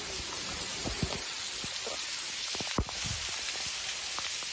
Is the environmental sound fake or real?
real